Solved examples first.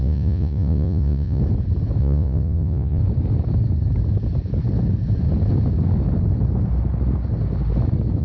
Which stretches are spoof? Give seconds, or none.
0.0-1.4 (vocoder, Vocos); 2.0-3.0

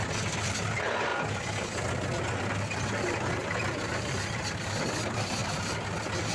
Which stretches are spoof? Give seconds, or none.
0.0-1.1 (vocoder, BigVGAN v2); 3.0-5.4

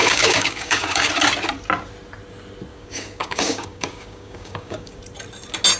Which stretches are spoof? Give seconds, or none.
0.0-1.1 (codec, DAC); 2.7-5.0